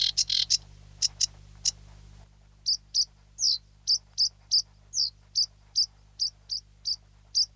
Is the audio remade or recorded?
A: recorded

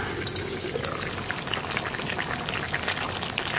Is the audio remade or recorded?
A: recorded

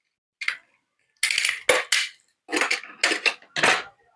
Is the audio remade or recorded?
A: recorded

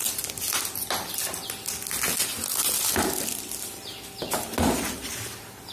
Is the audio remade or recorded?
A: recorded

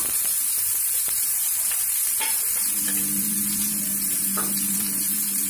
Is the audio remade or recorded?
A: remade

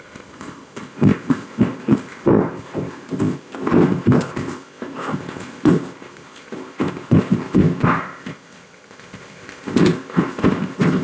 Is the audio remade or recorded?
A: remade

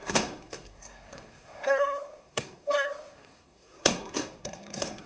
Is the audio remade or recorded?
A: remade